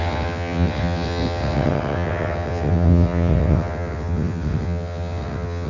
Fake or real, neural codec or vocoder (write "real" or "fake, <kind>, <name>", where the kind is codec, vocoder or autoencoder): fake, vocoder, WaveNeXt